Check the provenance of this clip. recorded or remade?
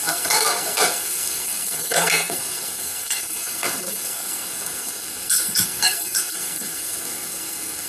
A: remade